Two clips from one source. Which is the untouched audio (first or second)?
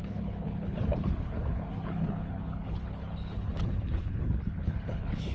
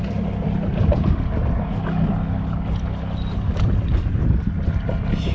second